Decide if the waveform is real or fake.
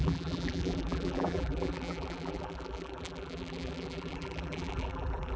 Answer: fake